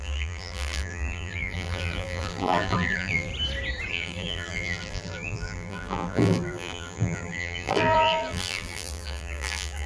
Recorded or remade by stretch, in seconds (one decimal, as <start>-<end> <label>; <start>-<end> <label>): 0.0-3.3 remade; 3.3-3.9 recorded; 3.9-9.9 remade